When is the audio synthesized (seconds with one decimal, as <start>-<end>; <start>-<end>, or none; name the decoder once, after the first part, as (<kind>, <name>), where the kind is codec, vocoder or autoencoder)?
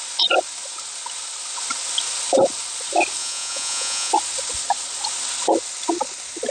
3.2-4.1 (vocoder, Vocos)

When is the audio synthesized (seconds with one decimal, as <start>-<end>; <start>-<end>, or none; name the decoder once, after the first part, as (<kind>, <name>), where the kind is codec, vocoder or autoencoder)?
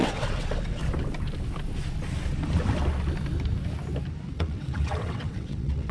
0.0-0.8 (vocoder, WaveNeXt); 4.3-5.9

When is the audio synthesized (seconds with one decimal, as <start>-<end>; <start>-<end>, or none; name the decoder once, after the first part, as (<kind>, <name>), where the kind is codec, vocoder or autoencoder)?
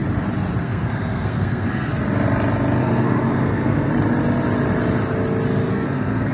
0.6-1.9 (codec, SNAC); 2.8-3.9; 5.7-6.3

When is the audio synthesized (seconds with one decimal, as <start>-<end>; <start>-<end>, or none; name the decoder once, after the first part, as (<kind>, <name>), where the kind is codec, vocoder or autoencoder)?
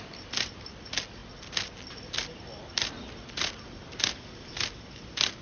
none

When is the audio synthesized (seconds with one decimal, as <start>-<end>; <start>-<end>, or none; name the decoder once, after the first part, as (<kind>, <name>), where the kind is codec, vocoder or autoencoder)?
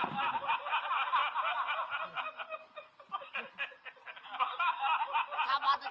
none